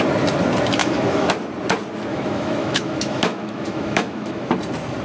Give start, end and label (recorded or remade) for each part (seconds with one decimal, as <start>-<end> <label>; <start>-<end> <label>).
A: 0.0-0.8 recorded; 0.8-1.3 remade; 1.3-2.1 recorded; 2.1-4.5 remade; 4.5-5.0 recorded